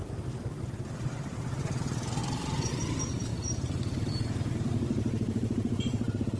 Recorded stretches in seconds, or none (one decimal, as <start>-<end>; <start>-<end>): none